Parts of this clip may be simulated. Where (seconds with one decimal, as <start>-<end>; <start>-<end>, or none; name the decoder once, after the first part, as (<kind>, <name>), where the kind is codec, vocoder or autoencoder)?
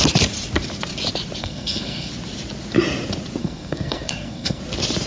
1.4-2.1 (codec, SNAC); 3.4-4.6